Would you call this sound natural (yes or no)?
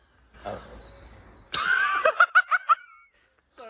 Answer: yes